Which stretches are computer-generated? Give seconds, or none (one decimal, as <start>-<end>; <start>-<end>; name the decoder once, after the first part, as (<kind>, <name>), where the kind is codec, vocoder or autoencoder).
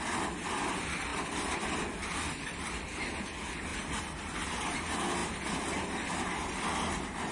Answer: 1.1-3.0 (vocoder, BigVGAN v2)